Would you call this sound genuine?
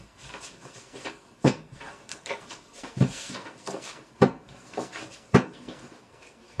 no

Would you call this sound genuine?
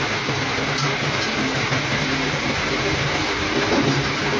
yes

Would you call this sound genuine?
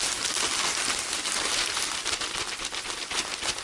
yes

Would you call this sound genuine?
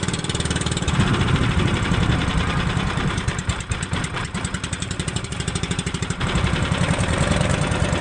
no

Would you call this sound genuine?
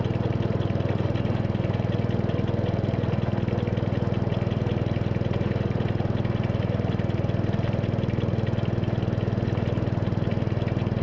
yes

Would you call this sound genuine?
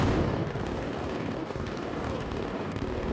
no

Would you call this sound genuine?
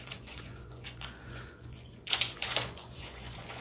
no